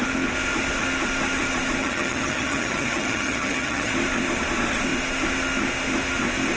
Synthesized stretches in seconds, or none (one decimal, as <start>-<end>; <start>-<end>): 1.8-3.9